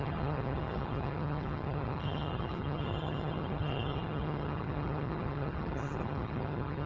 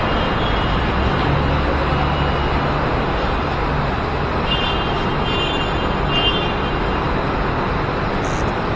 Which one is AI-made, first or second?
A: first